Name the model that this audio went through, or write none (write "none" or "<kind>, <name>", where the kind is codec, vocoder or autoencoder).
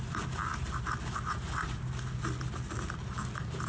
none